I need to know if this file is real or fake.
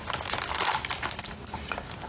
real